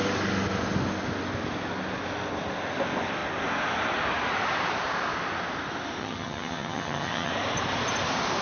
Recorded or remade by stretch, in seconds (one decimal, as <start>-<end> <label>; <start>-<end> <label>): 0.0-6.0 recorded; 6.0-7.3 remade; 7.3-8.4 recorded